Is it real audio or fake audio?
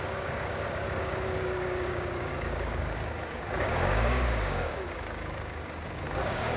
fake